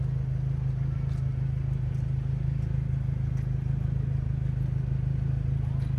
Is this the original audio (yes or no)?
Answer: yes